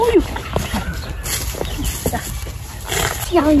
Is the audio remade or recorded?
recorded